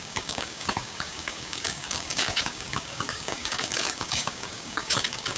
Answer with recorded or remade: remade